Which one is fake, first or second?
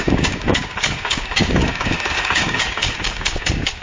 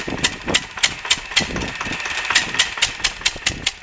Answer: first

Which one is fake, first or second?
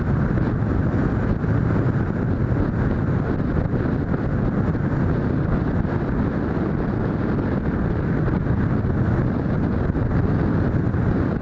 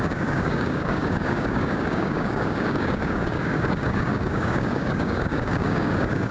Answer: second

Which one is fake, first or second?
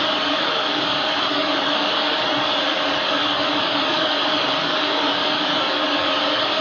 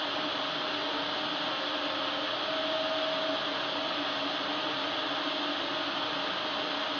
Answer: first